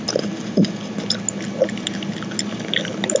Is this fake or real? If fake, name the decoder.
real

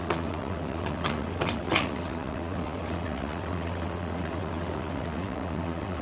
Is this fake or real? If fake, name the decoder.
fake, vocoder, WaveNeXt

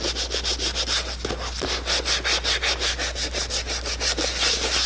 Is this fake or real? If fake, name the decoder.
real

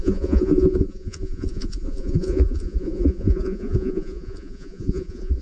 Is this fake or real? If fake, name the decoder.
fake, vocoder, Vocos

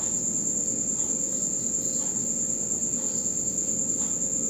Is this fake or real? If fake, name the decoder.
real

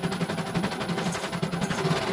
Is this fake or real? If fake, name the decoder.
real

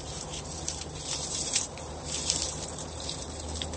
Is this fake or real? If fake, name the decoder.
fake, vocoder, BigVGAN v2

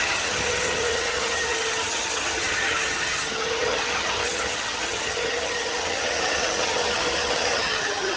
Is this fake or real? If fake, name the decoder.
fake, vocoder, HiFi-GAN